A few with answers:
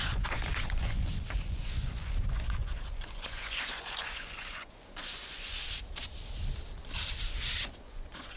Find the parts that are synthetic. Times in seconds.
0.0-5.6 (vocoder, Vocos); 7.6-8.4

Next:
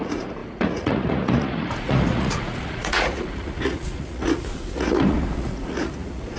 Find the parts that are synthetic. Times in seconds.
0.0-6.4 (vocoder, Vocos)

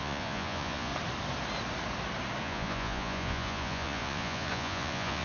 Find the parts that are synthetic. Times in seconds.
0.0-0.9 (vocoder, Vocos); 2.4-5.2

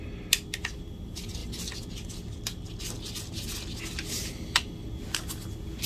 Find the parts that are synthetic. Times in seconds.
none

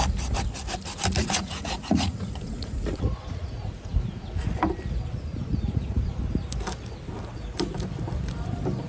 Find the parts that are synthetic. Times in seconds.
1.2-4.3 (vocoder, Vocos); 5.3-6.2

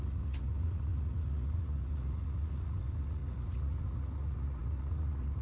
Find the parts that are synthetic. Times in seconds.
0.0-5.4 (vocoder, Vocos)

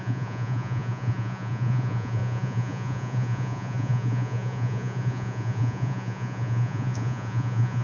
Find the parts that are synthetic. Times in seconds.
0.0-7.8 (vocoder, Vocos)

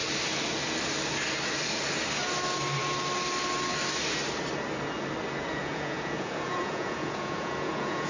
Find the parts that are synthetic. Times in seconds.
5.6-8.1 (vocoder, Vocos)